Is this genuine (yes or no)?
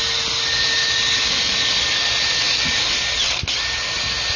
yes